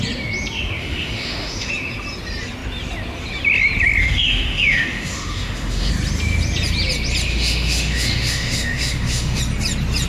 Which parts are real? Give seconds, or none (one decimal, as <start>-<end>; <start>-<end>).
0.0-0.8; 1.7-4.0; 5.9-7.3; 9.4-10.1